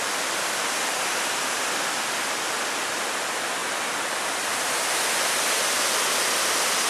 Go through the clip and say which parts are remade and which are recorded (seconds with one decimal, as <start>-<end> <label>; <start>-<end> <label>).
0.0-6.9 recorded